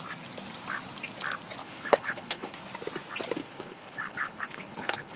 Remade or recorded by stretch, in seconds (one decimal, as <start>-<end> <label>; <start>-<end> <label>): 0.0-1.6 recorded; 1.6-2.6 remade; 2.6-3.4 recorded; 3.4-5.2 remade